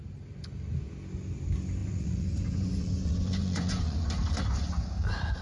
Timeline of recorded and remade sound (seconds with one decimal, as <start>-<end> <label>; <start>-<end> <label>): 0.0-1.8 recorded; 1.8-4.1 remade; 4.1-5.4 recorded